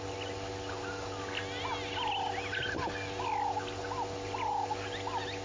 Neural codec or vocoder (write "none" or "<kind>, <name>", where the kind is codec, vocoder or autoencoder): none